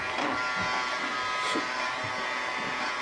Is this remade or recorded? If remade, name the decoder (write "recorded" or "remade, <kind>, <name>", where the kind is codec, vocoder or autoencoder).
recorded